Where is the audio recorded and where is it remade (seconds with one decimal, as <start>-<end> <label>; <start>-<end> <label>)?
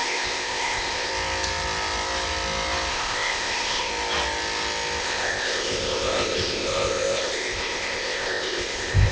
0.0-1.1 remade; 1.1-2.9 recorded; 2.9-3.9 remade; 3.9-5.0 recorded; 5.0-9.1 remade